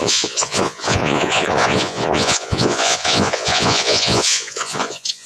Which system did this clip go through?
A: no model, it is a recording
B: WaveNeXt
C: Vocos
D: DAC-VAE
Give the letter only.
C